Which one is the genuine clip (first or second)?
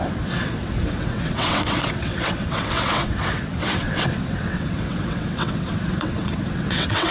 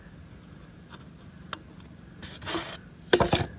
second